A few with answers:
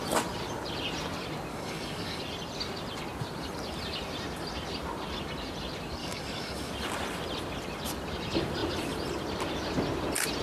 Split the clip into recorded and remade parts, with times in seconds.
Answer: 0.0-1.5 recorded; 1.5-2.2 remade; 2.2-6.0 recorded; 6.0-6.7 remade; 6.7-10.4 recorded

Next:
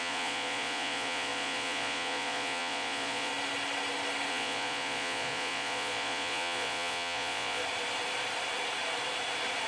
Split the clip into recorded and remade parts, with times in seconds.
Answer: 0.0-3.3 remade; 3.3-4.3 recorded; 4.3-7.6 remade; 7.6-9.7 recorded

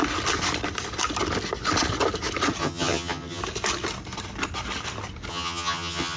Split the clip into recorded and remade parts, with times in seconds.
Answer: 0.0-2.6 recorded; 2.6-3.4 remade; 3.4-5.3 recorded; 5.3-6.2 remade

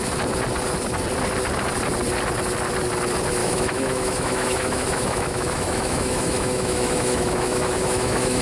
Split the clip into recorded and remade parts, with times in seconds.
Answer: 0.0-3.4 recorded; 3.4-8.4 remade

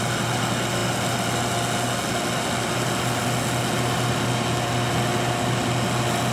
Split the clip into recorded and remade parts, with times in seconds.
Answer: 0.0-6.3 recorded

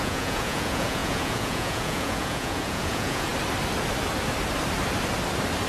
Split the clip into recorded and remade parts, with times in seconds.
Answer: 0.0-3.3 remade; 3.3-5.7 recorded

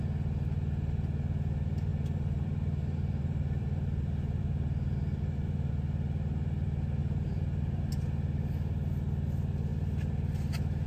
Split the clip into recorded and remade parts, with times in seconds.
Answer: 0.0-1.9 recorded; 1.9-5.7 remade; 5.7-7.0 recorded; 7.0-7.9 remade; 7.9-10.9 recorded

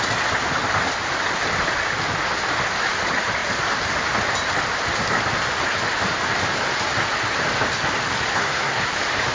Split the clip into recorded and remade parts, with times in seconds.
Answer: 0.0-8.3 recorded; 8.3-8.9 remade; 8.9-9.3 recorded